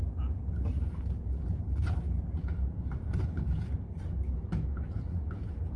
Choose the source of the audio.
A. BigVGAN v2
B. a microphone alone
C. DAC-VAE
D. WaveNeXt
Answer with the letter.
B